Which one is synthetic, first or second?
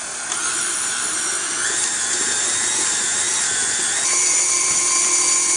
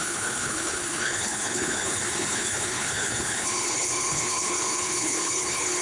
second